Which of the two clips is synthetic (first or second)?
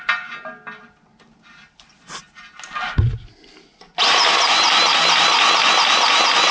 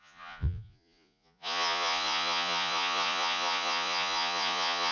second